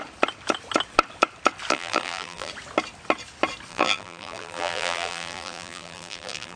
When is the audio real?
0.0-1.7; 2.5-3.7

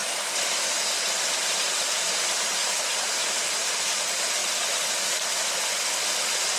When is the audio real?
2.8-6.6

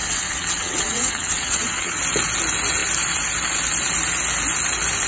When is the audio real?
2.0-5.1

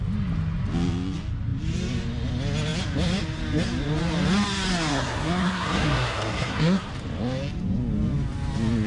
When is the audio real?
0.0-4.9; 6.9-8.9